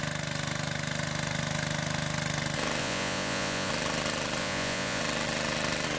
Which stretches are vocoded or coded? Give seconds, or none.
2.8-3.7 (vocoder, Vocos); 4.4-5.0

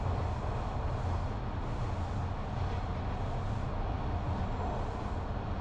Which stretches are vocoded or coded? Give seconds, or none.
none

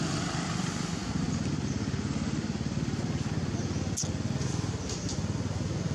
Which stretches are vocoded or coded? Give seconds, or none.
none

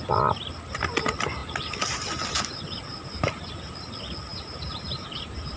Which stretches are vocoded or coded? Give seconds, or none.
2.9-3.5 (vocoder, BigVGAN v2); 4.3-5.6

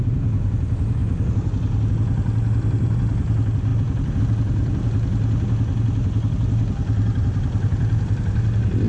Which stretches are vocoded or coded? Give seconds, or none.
3.7-4.2 (vocoder, BigVGAN v2); 6.8-8.2

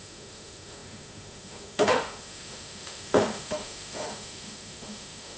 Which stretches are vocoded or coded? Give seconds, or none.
0.0-5.4 (autoencoder, DAC-VAE)

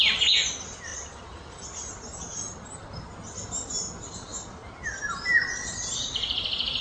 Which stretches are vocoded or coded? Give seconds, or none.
none